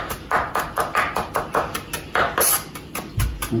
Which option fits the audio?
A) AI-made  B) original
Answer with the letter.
B